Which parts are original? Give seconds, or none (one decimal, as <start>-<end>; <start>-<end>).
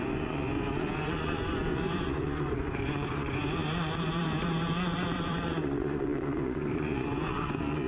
none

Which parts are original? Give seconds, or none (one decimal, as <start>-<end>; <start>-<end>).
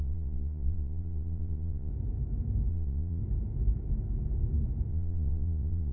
1.9-2.7; 3.2-4.9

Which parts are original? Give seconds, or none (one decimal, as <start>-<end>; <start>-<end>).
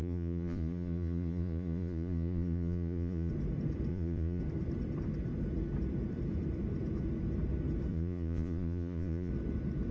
3.3-3.9; 4.4-7.9; 9.3-9.9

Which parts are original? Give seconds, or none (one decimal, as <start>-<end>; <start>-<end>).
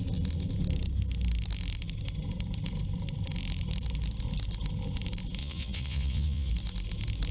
0.0-5.4; 6.5-7.3